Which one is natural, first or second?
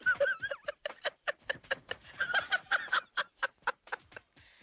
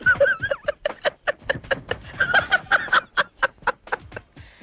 second